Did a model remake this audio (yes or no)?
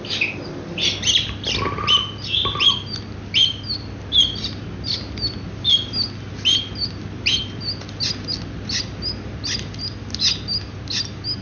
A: no